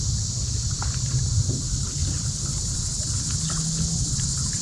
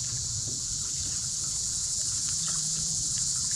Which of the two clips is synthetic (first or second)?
second